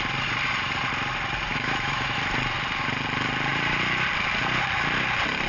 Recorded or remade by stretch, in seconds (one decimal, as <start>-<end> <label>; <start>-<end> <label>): 0.0-1.5 recorded; 1.5-2.2 remade; 2.2-5.5 recorded